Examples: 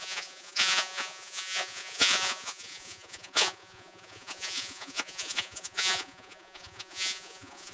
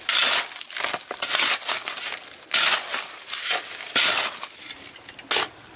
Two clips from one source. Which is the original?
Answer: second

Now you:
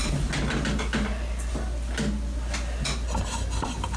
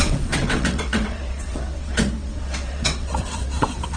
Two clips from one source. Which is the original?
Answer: first